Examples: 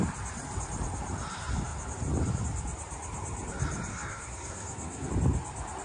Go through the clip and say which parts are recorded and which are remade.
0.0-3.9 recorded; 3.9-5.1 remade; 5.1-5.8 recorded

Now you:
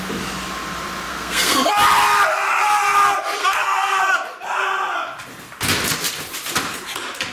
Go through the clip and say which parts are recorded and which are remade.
0.0-1.1 recorded; 1.1-1.7 remade; 1.7-3.4 recorded; 3.4-4.0 remade; 4.0-7.3 recorded

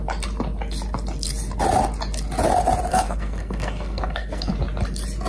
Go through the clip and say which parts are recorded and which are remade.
0.0-2.9 recorded; 2.9-4.5 remade; 4.5-5.3 recorded

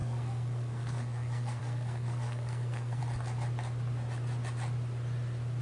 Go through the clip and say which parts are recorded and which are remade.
0.0-3.0 remade; 3.0-5.6 recorded

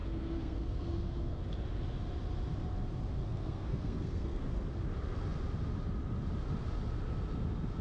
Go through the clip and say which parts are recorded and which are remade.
0.0-1.4 remade; 1.4-3.2 recorded; 3.2-4.7 remade; 4.7-7.8 recorded

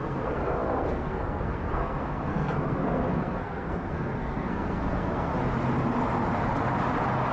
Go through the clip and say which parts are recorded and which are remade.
0.0-5.3 remade; 5.3-7.3 recorded